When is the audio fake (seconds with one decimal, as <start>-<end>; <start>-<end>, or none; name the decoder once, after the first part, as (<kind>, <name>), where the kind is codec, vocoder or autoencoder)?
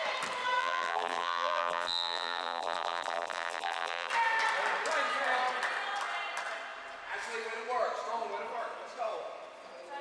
0.6-4.1 (vocoder, BigVGAN v2)